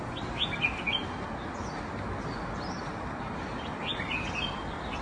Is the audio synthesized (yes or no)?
no